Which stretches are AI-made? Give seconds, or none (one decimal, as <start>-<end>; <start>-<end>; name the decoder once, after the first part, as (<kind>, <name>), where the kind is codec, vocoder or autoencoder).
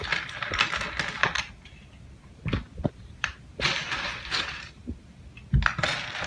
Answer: 1.2-1.9 (vocoder, BigVGAN v2); 2.7-5.2